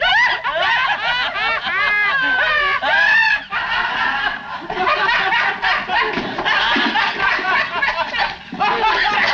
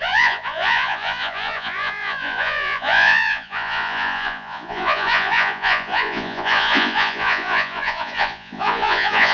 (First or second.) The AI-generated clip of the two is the second